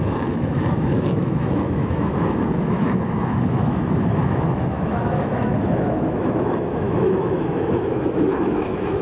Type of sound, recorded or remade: remade